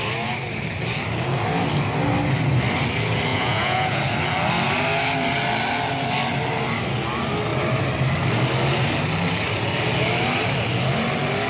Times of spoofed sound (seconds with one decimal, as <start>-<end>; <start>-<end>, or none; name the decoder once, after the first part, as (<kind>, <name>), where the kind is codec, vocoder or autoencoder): 3.3-4.0 (vocoder, Vocos)